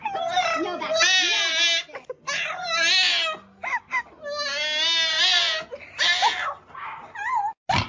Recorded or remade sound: recorded